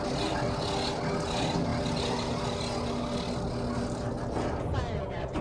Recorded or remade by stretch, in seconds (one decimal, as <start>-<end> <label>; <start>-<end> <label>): 0.0-4.7 recorded; 4.7-5.4 remade